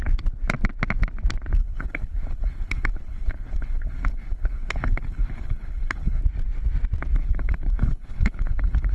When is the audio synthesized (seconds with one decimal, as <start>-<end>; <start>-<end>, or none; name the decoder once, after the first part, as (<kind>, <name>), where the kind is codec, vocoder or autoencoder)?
1.6-6.2 (codec, HILCodec); 7.2-8.9